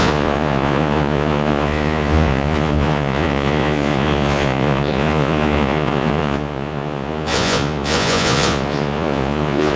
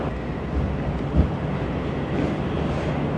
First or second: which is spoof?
first